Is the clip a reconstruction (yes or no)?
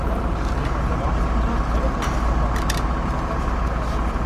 no